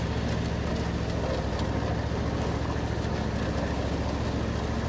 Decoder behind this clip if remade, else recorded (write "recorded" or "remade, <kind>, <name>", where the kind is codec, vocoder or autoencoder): recorded